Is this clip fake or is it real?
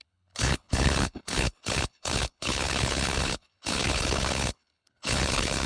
fake